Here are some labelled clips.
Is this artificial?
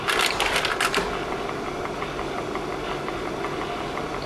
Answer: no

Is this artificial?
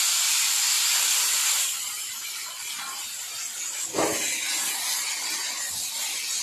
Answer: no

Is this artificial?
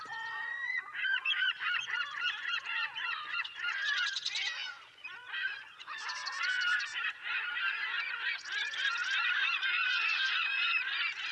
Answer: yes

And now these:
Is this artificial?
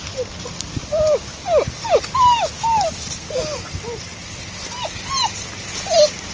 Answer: no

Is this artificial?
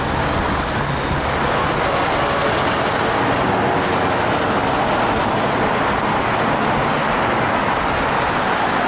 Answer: no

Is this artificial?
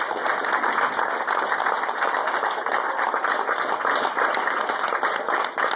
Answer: no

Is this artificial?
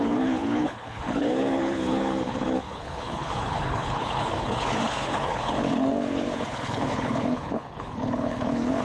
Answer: yes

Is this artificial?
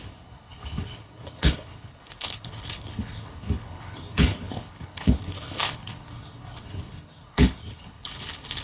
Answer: yes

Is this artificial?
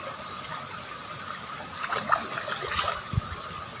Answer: no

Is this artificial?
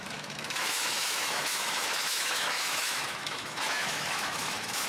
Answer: yes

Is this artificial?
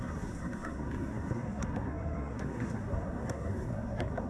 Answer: yes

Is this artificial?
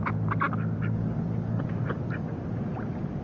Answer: no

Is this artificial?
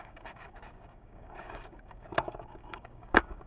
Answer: yes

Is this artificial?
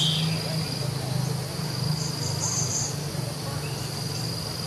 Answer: no